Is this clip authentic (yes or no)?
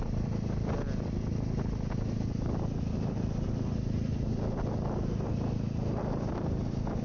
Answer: yes